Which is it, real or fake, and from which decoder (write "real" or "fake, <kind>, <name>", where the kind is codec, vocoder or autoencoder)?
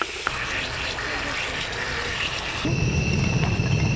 real